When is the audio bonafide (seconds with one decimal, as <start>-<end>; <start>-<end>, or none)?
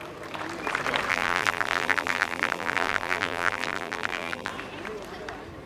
0.0-1.1; 4.5-5.7